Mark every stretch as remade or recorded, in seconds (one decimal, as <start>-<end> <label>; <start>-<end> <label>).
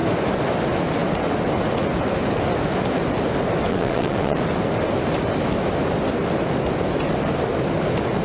0.0-3.7 recorded; 3.7-4.4 remade; 4.4-8.2 recorded